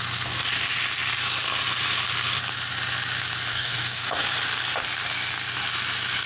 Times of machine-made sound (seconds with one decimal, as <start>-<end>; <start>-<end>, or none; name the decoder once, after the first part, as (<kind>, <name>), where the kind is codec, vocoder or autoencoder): 3.5-4.2 (codec, DAC)